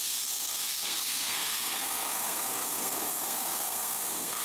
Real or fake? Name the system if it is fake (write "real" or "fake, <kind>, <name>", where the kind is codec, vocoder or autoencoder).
fake, codec, SNAC